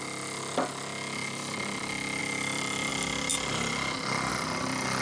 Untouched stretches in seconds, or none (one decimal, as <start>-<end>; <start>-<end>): 0.0-1.2; 1.8-2.2; 2.9-5.0